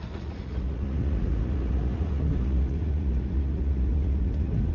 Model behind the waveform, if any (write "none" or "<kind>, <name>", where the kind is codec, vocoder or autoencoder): vocoder, Vocos